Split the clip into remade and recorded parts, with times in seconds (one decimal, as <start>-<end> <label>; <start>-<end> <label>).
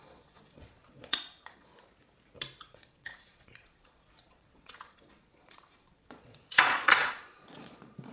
0.0-1.7 remade; 1.7-2.6 recorded; 2.6-8.1 remade